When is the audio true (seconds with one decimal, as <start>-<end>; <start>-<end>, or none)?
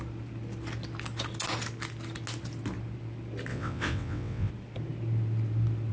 0.0-3.5; 4.5-5.9